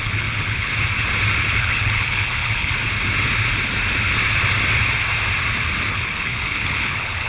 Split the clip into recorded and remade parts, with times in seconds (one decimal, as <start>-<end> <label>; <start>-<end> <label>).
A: 0.0-0.7 remade; 0.7-1.6 recorded; 1.6-2.7 remade; 2.7-5.9 recorded; 5.9-7.3 remade